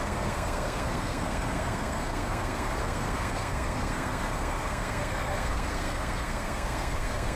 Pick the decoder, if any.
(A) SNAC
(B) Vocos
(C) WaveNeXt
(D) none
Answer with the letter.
A